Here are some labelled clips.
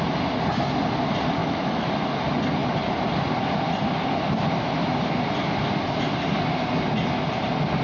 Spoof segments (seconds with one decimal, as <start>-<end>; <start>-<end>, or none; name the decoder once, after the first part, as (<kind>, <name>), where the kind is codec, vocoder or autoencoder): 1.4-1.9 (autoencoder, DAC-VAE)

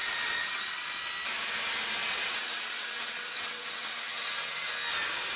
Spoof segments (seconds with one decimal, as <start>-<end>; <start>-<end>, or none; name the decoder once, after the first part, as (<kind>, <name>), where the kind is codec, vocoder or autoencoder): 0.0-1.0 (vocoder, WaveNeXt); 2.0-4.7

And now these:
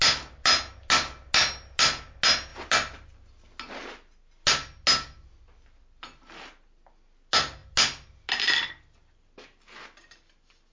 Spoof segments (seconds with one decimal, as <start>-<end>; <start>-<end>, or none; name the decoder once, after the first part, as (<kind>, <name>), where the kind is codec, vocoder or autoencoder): none

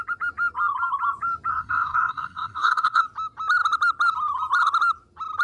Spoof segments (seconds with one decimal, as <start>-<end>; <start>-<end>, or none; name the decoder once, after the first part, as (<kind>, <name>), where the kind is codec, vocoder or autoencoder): 1.5-3.0 (codec, SNAC)